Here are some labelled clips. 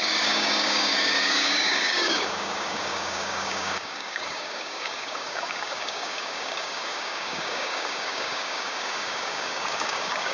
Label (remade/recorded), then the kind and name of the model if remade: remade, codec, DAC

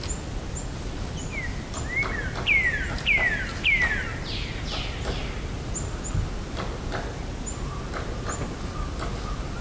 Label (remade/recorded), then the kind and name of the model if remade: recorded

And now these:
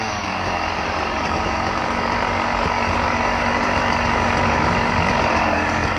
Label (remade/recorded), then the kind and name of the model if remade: remade, codec, DAC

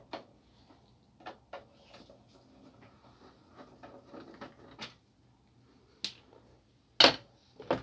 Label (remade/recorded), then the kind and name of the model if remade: recorded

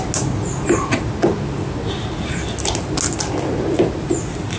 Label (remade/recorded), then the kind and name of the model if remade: recorded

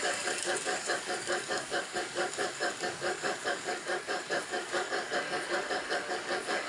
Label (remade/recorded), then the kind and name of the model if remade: remade, codec, DAC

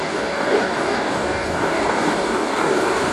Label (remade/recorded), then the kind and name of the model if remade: remade, codec, DAC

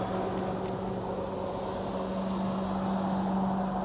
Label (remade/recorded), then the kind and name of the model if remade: recorded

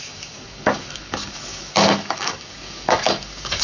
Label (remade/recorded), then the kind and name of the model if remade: remade, codec, DAC